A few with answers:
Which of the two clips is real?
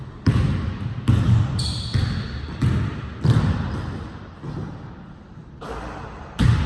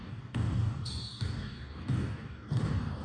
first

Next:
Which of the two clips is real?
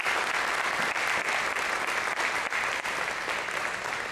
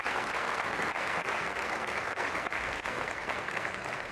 first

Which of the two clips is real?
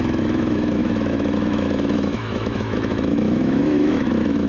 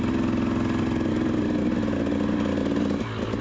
second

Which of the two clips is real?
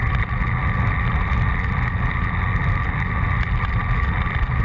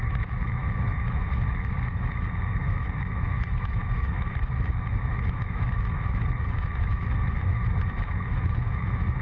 first